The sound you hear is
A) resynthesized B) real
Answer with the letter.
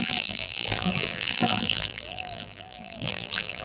A